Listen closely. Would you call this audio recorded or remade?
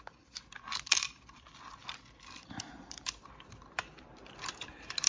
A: remade